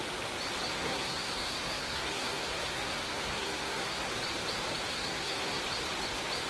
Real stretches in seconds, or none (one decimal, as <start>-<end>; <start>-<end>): 0.0-0.8; 4.1-4.9; 5.6-6.5